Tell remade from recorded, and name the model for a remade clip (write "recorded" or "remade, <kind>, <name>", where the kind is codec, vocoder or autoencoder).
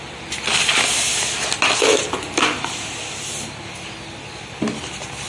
recorded